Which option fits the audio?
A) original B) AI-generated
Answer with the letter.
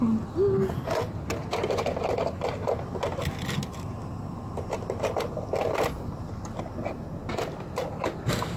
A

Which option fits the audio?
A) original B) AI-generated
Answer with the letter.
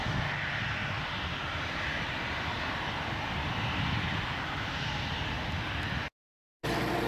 A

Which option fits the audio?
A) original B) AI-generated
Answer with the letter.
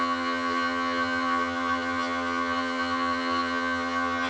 B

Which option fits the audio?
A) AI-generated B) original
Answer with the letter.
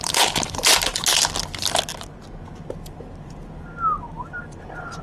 B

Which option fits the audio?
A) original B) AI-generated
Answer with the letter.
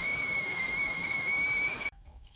B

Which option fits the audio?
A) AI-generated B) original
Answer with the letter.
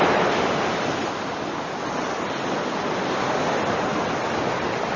B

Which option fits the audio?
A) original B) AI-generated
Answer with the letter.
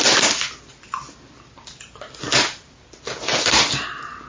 A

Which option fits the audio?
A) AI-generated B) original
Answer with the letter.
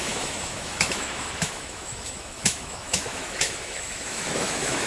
A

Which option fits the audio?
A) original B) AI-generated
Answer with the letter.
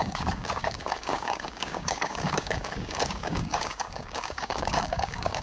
B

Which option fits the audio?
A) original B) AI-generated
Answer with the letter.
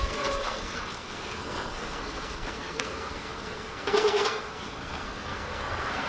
B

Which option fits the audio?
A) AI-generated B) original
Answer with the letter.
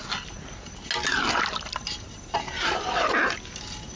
B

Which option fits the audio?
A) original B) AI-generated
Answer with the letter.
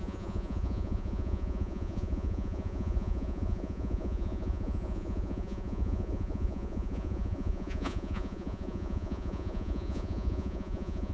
B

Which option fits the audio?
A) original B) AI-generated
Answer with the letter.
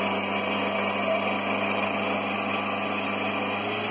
A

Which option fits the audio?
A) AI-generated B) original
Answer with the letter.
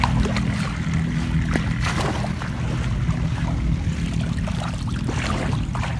B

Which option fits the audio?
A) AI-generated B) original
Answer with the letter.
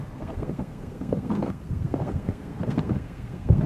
A